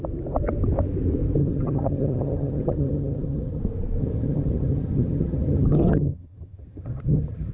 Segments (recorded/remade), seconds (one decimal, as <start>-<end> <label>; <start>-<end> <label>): 0.0-1.4 recorded; 1.4-3.6 remade; 3.6-4.0 recorded; 4.0-7.5 remade